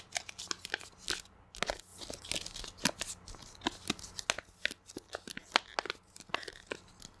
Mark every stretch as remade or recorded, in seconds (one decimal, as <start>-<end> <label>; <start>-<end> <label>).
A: 0.0-7.2 recorded